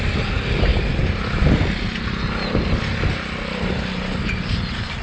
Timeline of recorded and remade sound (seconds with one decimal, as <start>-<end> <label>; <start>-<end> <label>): 0.0-5.0 recorded